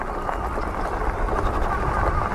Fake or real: real